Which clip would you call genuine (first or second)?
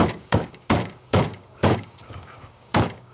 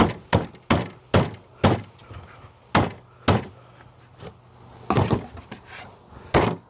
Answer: second